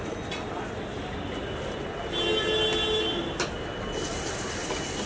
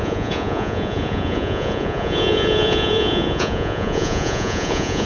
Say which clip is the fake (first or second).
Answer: second